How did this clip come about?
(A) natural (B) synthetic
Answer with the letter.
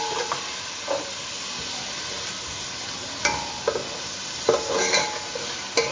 A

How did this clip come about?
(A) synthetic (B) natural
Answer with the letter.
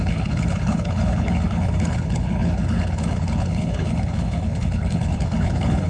A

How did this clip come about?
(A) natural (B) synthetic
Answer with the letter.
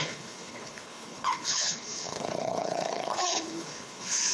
B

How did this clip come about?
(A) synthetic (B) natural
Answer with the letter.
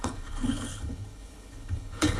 A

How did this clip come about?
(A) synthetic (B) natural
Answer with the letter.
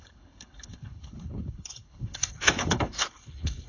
A